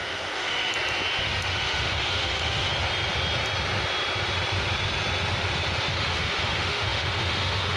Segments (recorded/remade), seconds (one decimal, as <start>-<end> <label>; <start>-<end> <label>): 0.0-0.7 remade; 0.7-1.2 recorded; 1.2-2.7 remade; 2.7-5.9 recorded; 5.9-7.8 remade